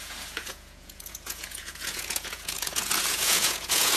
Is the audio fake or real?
fake